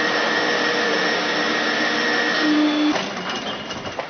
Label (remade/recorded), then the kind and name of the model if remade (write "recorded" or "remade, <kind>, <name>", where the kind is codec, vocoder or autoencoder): recorded